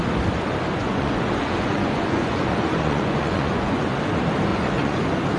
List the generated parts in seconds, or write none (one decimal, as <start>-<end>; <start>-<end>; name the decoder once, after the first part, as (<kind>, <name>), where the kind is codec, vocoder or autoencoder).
0.8-4.0 (vocoder, Vocos); 4.5-5.0